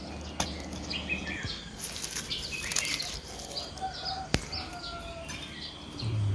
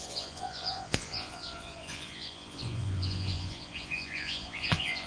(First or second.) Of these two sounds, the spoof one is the second